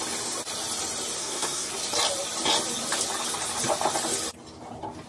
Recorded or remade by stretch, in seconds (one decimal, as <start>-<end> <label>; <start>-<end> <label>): 0.0-1.2 recorded; 1.2-1.7 remade; 1.7-5.1 recorded